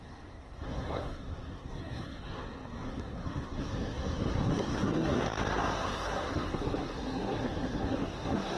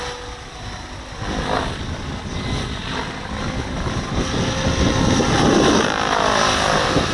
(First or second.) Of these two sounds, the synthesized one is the first